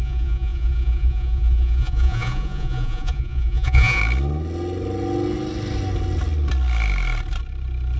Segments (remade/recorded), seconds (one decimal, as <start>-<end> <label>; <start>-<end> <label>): 0.0-4.0 remade; 4.0-8.0 recorded